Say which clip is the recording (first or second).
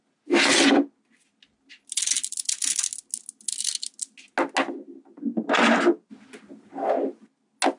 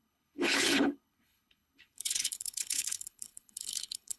first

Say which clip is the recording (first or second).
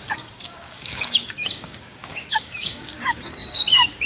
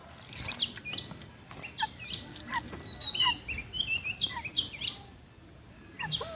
second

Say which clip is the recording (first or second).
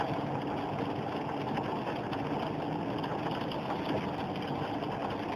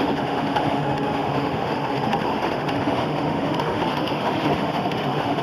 first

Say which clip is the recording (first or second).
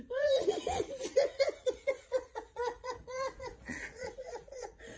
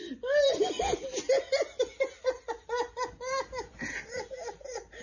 second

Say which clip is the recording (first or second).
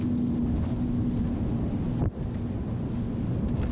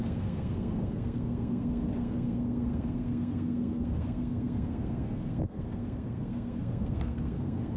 first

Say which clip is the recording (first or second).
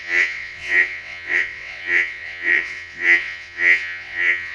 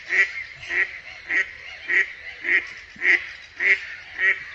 second